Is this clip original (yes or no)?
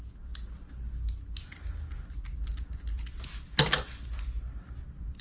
yes